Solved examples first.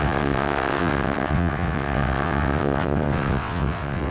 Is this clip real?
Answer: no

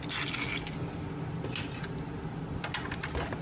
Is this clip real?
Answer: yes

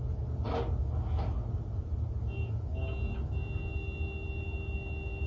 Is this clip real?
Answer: yes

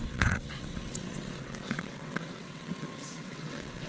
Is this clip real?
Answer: no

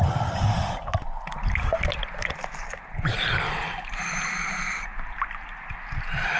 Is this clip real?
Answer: yes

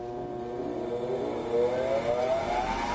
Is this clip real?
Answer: yes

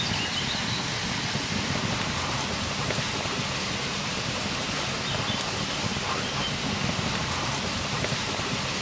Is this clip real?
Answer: yes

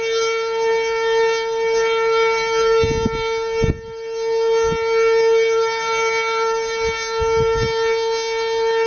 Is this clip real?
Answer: yes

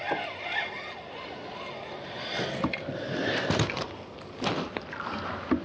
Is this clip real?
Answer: yes